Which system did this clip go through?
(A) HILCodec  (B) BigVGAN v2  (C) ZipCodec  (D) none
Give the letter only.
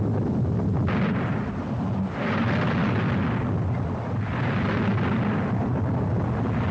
D